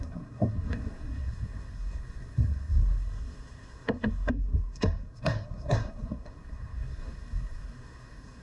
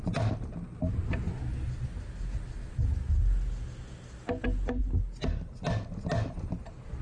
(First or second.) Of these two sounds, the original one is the second